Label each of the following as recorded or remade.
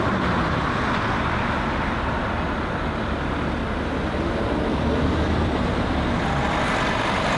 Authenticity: recorded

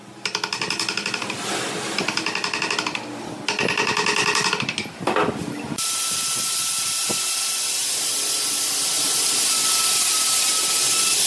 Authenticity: recorded